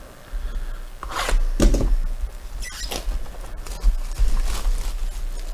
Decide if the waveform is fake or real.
real